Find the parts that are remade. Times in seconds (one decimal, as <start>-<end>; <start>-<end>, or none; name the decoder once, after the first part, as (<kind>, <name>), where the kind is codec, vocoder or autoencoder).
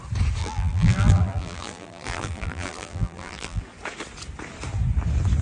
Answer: 0.4-3.6 (vocoder, BigVGAN v2)